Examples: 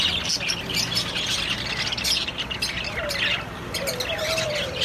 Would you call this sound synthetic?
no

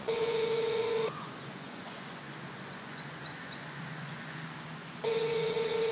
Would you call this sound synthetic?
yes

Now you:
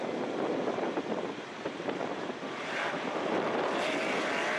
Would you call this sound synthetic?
yes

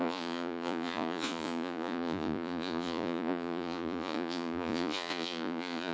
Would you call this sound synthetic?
yes